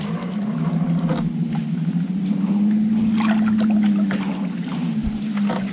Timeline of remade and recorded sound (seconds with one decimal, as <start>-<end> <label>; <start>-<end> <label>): 0.0-4.7 recorded; 4.7-5.3 remade; 5.3-5.7 recorded